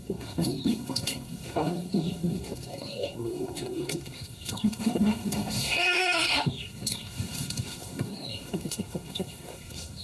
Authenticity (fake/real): fake